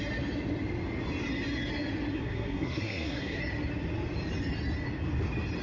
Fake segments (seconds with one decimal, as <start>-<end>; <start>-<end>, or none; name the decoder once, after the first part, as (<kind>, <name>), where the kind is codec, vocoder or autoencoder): 2.1-3.4 (codec, SNAC)